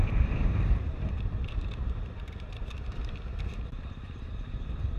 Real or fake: fake